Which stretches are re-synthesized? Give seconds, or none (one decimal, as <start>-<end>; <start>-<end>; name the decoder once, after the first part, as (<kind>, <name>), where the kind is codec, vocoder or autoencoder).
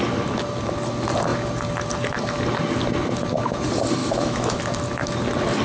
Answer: 4.0-4.6 (autoencoder, DAC-VAE)